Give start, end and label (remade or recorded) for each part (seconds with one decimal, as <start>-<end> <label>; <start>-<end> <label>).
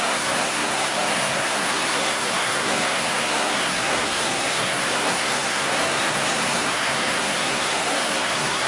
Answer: 0.0-8.7 remade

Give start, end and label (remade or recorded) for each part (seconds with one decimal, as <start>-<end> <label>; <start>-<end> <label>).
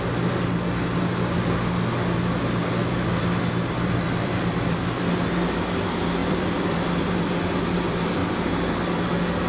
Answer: 0.0-2.8 recorded; 2.8-5.1 remade; 5.1-6.2 recorded; 6.2-7.4 remade; 7.4-9.5 recorded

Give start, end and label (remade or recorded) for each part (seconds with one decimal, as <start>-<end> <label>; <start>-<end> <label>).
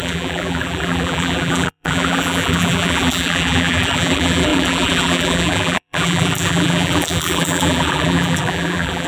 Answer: 0.0-9.1 remade